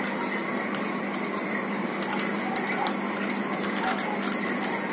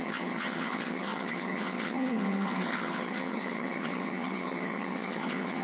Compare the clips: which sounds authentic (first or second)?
first